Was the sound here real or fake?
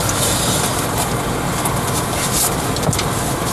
real